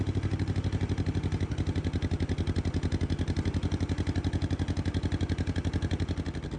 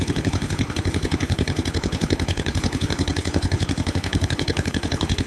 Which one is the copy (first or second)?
second